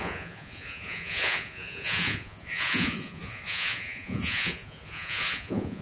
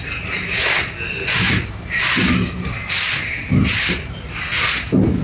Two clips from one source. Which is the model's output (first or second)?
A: first